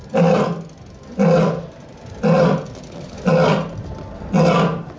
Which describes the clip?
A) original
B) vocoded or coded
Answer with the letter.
A